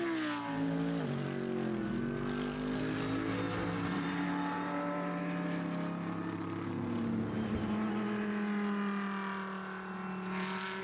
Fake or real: real